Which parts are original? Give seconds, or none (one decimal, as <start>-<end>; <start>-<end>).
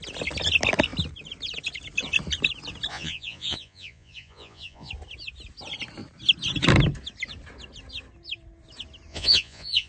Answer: 0.0-2.9; 4.9-9.1